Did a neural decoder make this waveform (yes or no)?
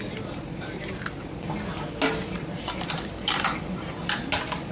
no